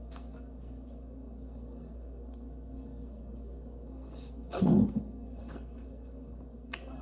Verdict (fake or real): fake